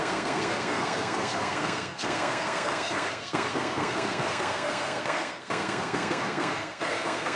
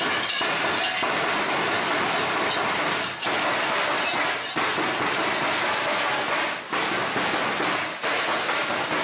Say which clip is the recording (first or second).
second